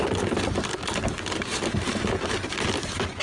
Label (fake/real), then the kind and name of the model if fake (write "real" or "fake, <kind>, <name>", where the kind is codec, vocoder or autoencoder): real